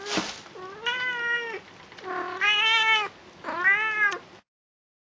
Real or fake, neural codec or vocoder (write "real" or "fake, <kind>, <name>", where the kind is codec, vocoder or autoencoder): real